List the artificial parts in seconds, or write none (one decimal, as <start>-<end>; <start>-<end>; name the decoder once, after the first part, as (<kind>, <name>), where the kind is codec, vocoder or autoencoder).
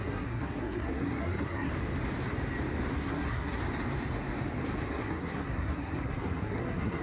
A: 0.0-1.7 (codec, SNAC); 2.9-3.6; 4.9-7.0